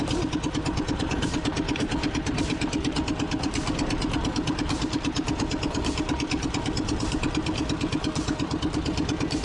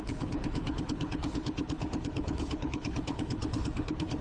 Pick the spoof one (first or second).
second